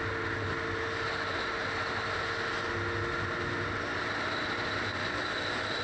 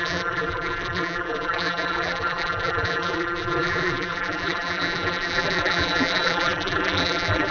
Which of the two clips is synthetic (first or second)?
second